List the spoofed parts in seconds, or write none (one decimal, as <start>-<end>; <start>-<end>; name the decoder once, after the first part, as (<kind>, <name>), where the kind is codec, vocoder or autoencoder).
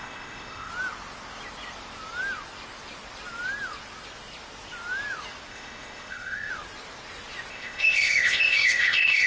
0.0-0.7 (codec, ZipCodec); 5.5-6.5; 7.5-9.3